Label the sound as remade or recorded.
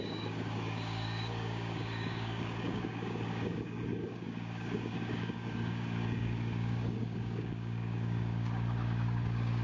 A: remade